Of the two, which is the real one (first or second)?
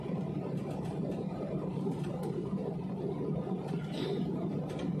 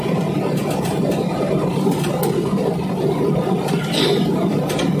second